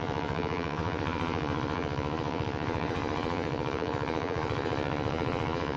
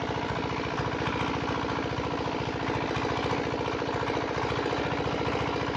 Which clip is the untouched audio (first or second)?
second